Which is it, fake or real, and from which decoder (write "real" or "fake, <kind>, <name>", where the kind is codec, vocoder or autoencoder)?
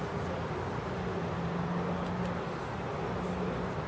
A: real